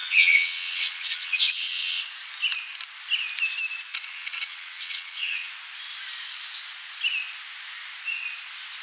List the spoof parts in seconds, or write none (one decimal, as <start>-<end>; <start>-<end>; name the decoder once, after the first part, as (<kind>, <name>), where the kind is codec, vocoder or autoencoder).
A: 0.0-2.0 (vocoder, WaveNeXt); 3.9-5.5